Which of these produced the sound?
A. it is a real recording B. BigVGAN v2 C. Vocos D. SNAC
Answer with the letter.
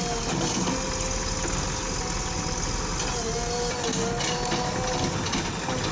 A